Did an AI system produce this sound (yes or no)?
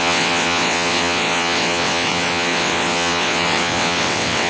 yes